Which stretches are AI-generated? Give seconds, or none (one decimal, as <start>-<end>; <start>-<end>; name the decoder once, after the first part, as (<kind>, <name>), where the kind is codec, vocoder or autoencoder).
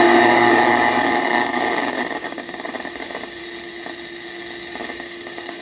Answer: 0.0-3.4 (codec, DAC); 4.8-5.6